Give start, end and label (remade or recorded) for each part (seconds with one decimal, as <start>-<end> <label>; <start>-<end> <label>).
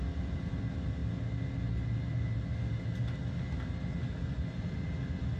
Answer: 0.0-1.0 remade; 1.0-4.2 recorded; 4.2-5.4 remade